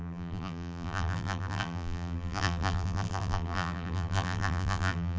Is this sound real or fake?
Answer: fake